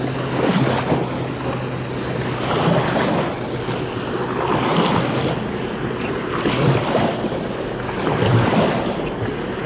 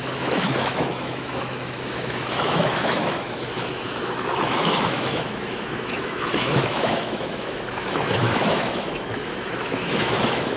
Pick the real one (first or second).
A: first